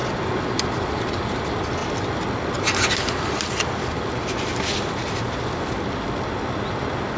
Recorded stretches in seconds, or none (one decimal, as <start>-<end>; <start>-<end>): 0.0-7.2